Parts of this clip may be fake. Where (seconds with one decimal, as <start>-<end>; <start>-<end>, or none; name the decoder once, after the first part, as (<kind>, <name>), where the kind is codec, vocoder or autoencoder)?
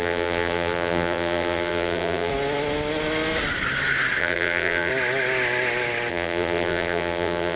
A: 0.0-2.3 (vocoder, BigVGAN v2); 4.2-4.9; 6.1-7.6